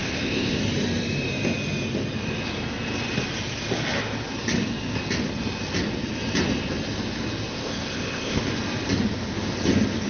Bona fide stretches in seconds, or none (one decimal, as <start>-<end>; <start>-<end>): 0.6-7.5; 8.4-10.1